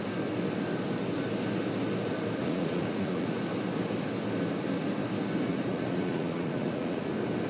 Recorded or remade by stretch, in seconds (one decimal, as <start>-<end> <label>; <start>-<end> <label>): 0.0-2.4 recorded; 2.4-3.4 remade; 3.4-5.5 recorded; 5.5-7.0 remade; 7.0-7.5 recorded